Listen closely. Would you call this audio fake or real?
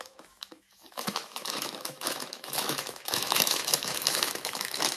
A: fake